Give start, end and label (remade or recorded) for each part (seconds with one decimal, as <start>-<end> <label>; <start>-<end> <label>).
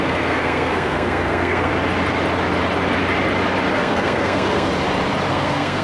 0.0-1.7 remade; 1.7-3.7 recorded; 3.7-4.7 remade; 4.7-5.3 recorded; 5.3-5.8 remade